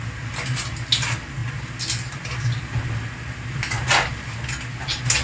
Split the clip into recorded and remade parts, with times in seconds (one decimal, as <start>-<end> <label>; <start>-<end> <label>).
0.0-5.2 recorded